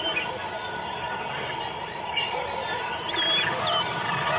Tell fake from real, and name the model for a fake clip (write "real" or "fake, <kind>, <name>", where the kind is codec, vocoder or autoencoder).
real